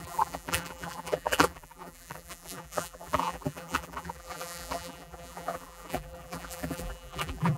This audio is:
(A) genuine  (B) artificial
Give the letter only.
B